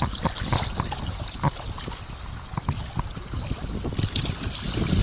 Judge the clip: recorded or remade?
recorded